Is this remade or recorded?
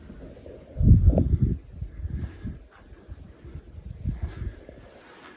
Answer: recorded